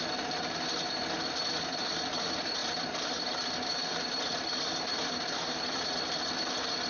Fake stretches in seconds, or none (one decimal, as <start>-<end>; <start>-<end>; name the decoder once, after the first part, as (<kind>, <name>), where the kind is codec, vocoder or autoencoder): 2.6-3.2 (vocoder, BigVGAN v2); 3.8-4.4